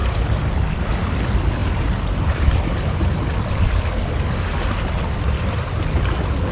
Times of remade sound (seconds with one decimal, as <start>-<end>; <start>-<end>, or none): 0.0-0.5; 1.6-3.1